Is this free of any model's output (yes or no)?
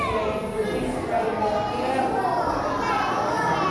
yes